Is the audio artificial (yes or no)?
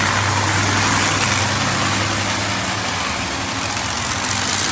no